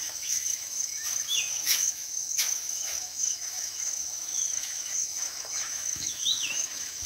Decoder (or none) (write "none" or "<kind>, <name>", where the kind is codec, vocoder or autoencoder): autoencoder, DAC-VAE